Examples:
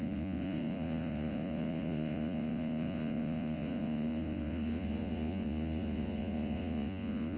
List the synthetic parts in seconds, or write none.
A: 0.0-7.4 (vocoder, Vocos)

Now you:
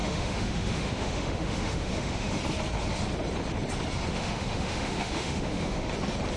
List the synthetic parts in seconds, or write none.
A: 0.0-2.4 (autoencoder, DAC-VAE); 4.1-5.9

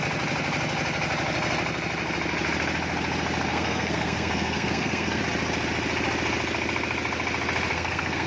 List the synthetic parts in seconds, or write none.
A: 3.5-5.2 (codec, SNAC); 7.7-8.3

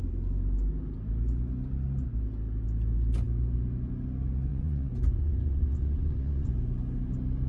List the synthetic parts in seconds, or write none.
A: 4.5-6.5 (vocoder, Vocos)